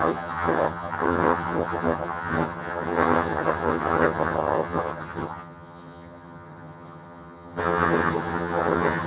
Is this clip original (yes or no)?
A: no